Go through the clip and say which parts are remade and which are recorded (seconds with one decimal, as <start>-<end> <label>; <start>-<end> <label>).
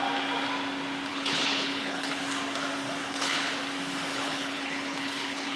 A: 0.0-1.1 recorded; 1.1-2.2 remade; 2.2-3.0 recorded; 3.0-3.5 remade; 3.5-4.1 recorded; 4.1-5.6 remade